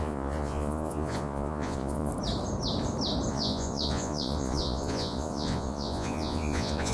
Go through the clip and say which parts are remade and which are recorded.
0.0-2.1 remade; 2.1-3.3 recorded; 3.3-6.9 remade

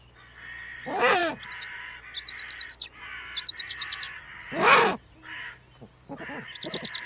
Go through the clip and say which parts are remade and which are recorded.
0.0-7.1 recorded

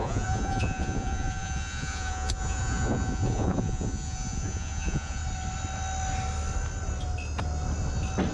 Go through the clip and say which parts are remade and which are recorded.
0.0-5.2 remade; 5.2-8.3 recorded

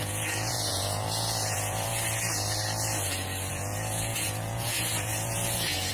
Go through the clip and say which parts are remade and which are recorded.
0.0-1.9 remade; 1.9-3.5 recorded; 3.5-5.9 remade